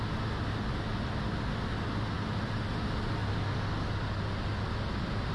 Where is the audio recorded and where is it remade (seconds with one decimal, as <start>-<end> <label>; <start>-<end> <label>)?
0.0-5.3 recorded